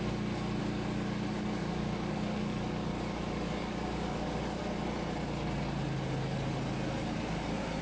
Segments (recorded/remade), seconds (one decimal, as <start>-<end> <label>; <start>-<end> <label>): 0.0-0.6 recorded; 0.6-4.6 remade; 4.6-7.8 recorded